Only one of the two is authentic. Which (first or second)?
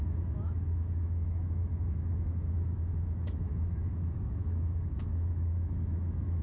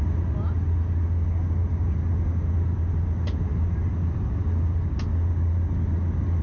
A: second